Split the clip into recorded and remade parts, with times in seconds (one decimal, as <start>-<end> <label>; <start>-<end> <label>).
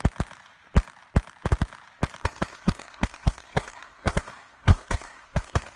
0.0-2.2 recorded; 2.2-5.8 remade